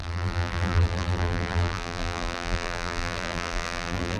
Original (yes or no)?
no